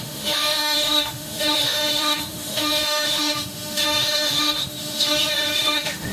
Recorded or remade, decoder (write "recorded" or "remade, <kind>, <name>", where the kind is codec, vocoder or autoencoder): remade, autoencoder, DAC-VAE